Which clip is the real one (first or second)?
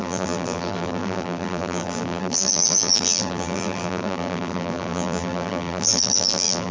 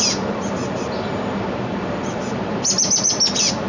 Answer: second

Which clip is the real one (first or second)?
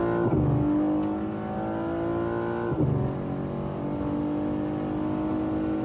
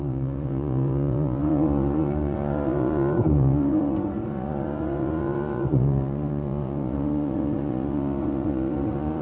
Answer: first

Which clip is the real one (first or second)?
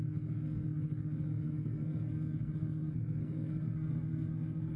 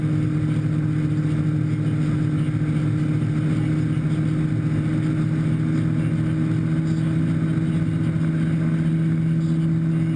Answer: second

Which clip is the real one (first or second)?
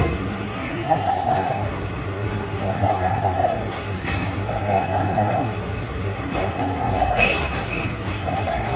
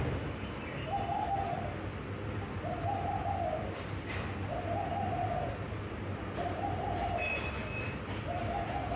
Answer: second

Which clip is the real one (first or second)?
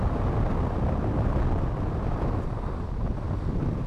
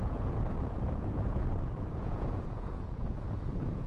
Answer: first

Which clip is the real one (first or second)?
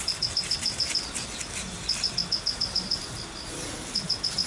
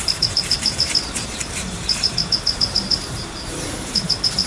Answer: first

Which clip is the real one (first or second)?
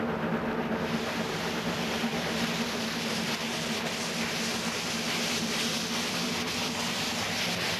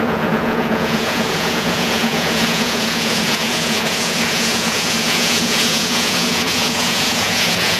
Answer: first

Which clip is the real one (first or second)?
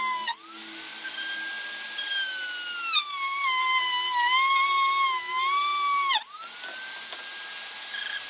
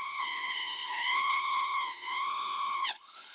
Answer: first